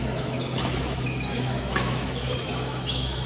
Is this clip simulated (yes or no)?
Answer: yes